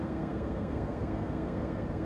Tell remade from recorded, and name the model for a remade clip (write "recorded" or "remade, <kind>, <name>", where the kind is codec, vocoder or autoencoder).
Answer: remade, codec, SNAC